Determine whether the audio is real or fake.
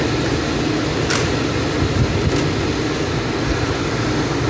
real